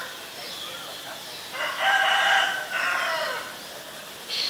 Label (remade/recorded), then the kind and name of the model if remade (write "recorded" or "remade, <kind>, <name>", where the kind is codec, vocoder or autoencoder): recorded